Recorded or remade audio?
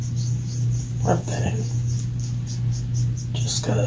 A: recorded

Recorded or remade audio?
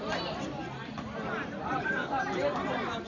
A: remade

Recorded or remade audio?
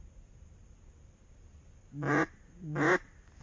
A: recorded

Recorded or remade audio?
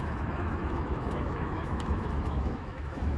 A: remade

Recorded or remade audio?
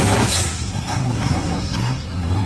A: remade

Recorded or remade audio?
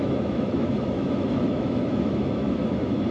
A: remade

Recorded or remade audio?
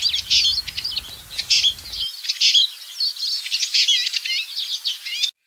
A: recorded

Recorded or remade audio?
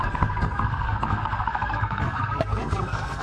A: remade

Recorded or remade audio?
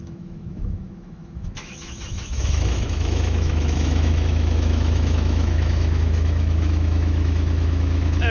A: remade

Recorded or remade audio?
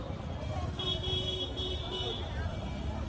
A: recorded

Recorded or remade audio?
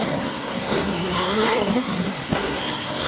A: remade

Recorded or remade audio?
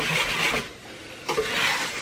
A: recorded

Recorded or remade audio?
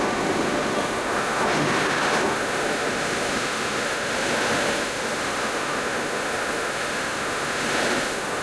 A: remade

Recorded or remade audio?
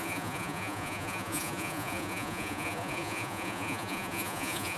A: remade